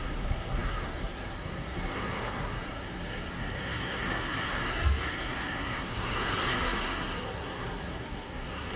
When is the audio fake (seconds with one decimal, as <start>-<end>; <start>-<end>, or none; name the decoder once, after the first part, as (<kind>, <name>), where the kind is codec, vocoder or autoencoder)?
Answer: 0.0-8.8 (codec, SNAC)